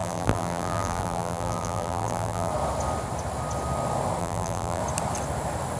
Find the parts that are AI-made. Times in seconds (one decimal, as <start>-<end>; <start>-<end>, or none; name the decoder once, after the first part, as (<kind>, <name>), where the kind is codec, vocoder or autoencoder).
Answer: 0.0-2.5 (vocoder, BigVGAN v2); 4.2-4.8